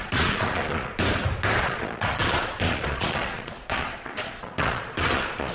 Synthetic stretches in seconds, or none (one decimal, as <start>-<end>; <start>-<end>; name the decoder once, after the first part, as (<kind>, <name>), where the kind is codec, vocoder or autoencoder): 0.0-0.9 (vocoder, Vocos); 1.6-5.5